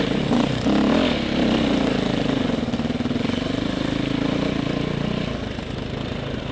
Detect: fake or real real